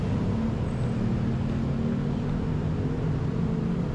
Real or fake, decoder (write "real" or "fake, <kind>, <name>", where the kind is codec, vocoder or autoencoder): real